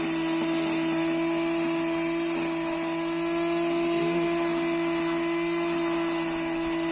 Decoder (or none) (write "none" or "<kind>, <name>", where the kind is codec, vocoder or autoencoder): none